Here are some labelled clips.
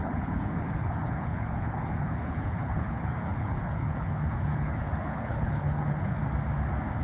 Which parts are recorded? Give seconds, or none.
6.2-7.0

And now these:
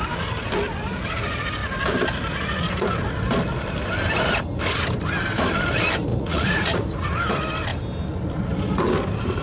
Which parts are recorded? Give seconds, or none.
0.0-6.1; 6.8-9.4

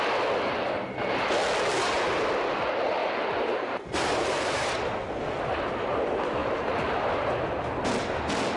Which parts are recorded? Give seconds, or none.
0.0-3.0; 4.7-6.4; 7.0-8.6

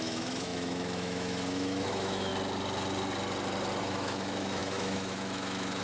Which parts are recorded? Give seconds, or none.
2.3-3.8